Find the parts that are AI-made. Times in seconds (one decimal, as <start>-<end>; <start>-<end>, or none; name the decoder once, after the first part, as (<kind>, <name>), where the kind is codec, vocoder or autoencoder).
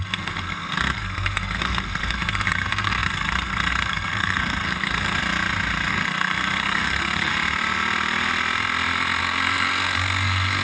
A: 0.0-5.2 (codec, SNAC); 5.9-7.3; 9.2-10.6